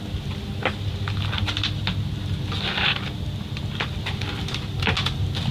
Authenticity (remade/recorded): recorded